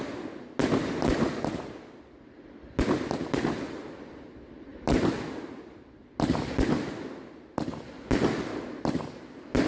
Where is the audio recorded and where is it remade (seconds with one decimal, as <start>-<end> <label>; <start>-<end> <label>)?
0.0-9.7 recorded